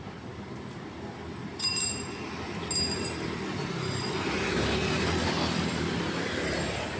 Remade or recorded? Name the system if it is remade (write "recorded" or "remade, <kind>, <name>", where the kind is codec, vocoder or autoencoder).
recorded